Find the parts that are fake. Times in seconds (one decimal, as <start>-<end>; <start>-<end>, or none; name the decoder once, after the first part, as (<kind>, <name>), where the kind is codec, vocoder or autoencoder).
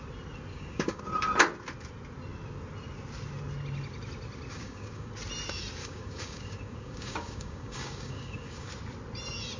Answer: 0.5-1.0 (codec, DAC); 4.5-5.1; 5.8-8.7